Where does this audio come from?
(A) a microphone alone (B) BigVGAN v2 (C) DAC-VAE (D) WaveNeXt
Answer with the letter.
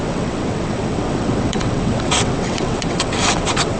D